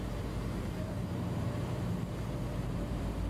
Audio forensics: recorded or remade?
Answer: remade